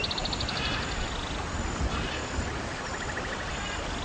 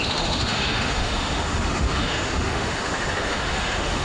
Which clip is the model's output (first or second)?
second